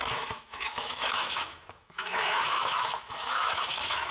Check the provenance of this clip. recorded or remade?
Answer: remade